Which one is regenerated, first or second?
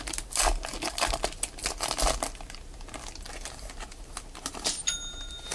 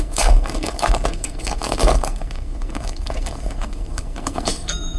second